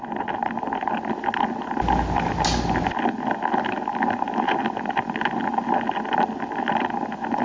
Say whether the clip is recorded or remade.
recorded